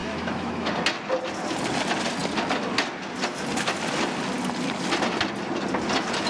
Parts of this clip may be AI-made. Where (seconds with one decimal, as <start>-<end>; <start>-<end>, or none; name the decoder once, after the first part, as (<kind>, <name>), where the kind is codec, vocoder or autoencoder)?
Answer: 0.0-0.7 (autoencoder, DAC-VAE)